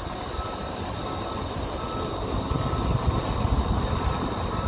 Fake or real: real